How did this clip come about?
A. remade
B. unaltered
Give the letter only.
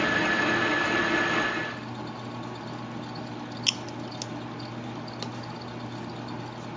B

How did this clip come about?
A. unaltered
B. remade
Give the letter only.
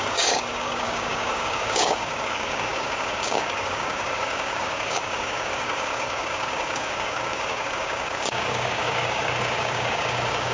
B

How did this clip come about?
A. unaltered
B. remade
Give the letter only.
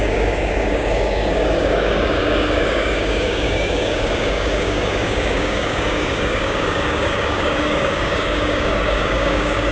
B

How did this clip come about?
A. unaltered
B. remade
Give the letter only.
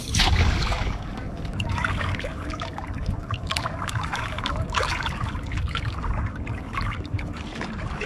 B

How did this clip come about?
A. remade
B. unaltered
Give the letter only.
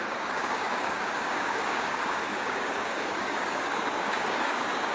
A